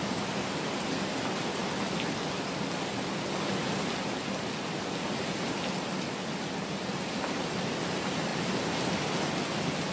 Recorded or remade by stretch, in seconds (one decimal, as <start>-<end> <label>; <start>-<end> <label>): 0.0-9.9 recorded